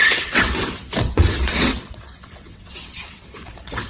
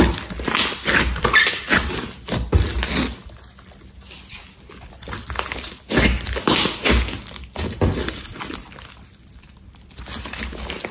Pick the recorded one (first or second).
second